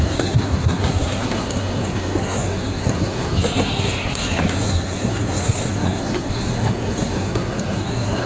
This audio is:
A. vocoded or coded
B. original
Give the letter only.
A